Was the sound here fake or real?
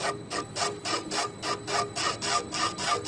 real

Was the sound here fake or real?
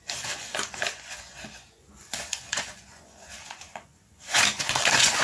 fake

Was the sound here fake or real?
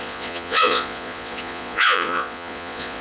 fake